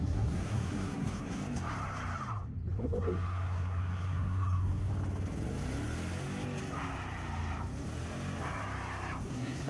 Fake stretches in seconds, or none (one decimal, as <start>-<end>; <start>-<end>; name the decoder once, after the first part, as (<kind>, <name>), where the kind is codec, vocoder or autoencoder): 0.0-1.4 (codec, SNAC); 2.8-4.9; 9.2-9.7

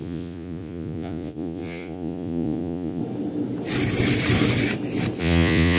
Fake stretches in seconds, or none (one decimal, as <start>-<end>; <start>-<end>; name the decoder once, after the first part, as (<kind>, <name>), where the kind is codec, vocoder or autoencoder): 0.0-3.0 (vocoder, Vocos); 5.2-5.8

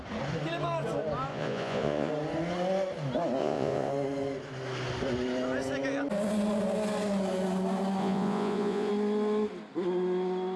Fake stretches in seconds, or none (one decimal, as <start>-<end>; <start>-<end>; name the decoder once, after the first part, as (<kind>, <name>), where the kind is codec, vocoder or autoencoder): 1.3-2.1 (vocoder, Vocos); 3.4-3.9; 8.0-8.9

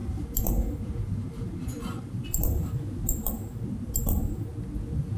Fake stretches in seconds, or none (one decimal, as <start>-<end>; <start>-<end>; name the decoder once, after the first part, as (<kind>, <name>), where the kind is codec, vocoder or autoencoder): none

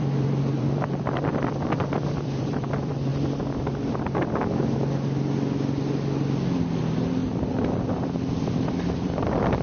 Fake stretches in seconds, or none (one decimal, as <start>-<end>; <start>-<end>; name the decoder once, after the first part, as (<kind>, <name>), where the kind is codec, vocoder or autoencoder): 0.0-3.1 (vocoder, BigVGAN v2); 6.8-7.2; 7.9-9.6